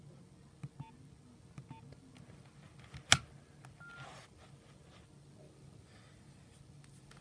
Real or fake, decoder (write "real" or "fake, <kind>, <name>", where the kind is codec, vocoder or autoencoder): real